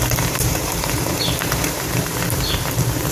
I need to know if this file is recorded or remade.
remade